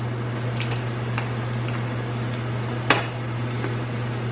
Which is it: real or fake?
real